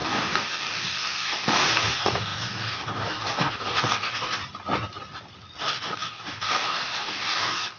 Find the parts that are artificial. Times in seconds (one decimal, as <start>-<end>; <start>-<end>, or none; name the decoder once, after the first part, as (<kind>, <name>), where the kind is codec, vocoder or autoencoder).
0.0-4.4 (codec, DAC); 5.6-7.8